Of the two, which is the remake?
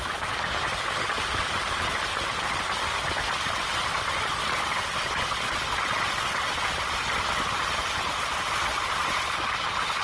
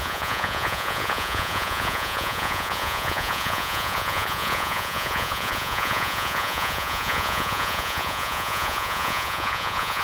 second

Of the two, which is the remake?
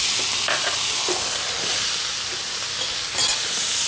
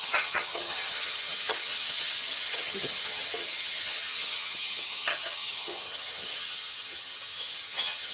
second